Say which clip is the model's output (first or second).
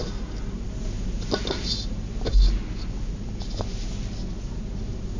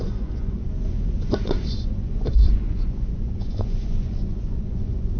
second